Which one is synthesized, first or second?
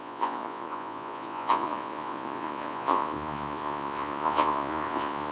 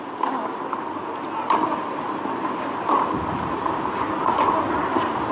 first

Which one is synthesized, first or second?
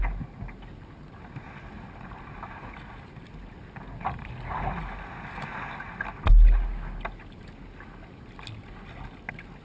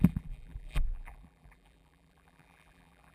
second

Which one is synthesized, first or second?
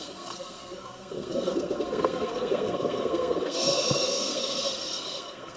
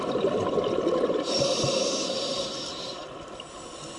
first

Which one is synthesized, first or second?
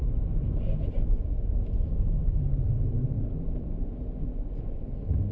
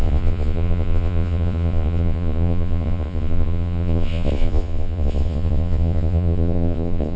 second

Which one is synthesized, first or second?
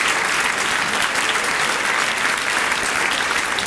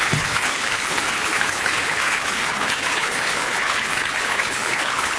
second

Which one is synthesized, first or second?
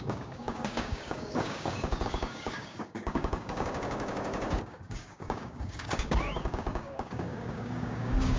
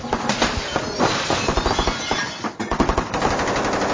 first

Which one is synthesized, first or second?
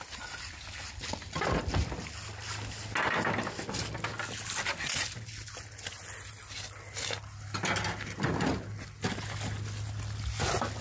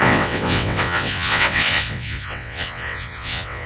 second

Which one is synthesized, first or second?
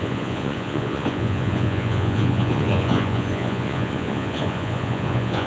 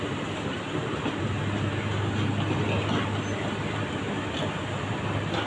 first